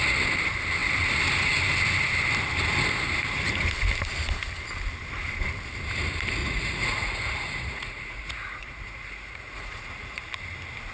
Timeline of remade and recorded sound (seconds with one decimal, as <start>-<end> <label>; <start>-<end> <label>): 0.0-6.4 recorded; 6.4-10.3 remade; 10.3-10.9 recorded